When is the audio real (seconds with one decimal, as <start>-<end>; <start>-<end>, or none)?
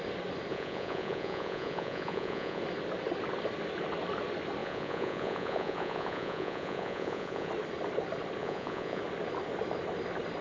0.0-0.5; 2.6-4.6; 7.5-8.4; 9.0-10.4